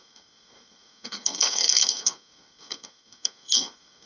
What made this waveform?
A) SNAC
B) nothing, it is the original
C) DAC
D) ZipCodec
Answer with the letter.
A